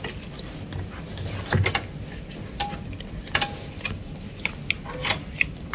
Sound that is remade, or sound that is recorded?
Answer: recorded